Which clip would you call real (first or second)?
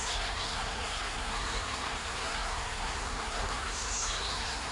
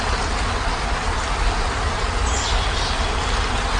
second